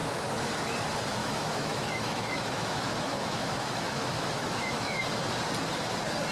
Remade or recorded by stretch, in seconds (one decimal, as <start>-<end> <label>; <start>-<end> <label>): 0.0-0.5 remade; 0.5-1.2 recorded; 1.2-5.0 remade; 5.0-6.3 recorded